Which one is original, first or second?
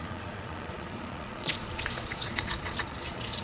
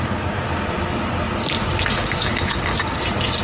second